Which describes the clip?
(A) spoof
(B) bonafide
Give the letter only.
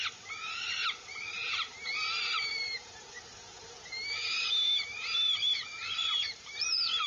A